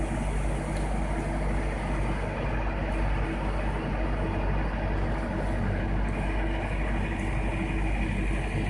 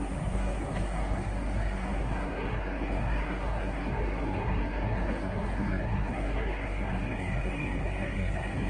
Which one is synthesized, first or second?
second